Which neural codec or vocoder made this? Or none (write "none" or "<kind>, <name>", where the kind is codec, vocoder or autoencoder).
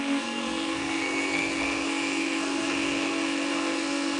codec, SNAC